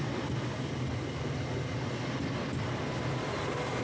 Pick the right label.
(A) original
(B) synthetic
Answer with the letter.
A